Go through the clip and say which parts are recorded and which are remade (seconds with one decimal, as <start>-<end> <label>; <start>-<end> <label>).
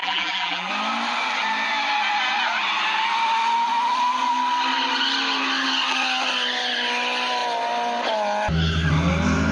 0.0-0.7 remade; 0.7-9.5 recorded